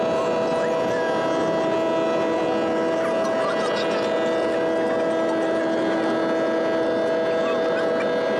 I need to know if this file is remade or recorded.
recorded